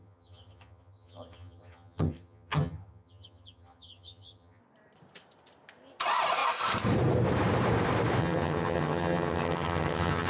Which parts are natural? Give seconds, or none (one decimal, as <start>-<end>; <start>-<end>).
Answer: 4.6-8.2